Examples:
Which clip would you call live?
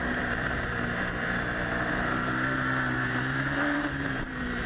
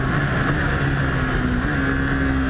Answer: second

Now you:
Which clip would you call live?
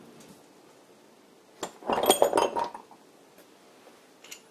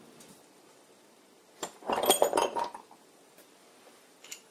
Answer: first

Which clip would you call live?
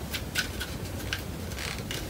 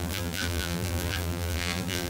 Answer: first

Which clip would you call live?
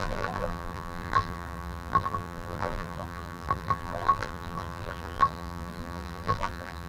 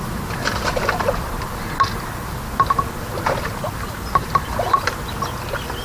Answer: second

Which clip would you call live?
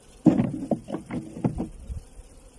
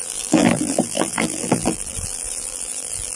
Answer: first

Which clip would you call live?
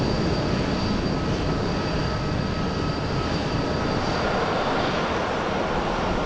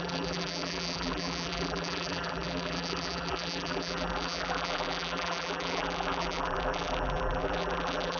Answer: first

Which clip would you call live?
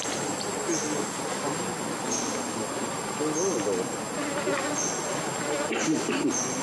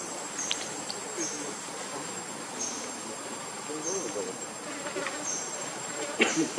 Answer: first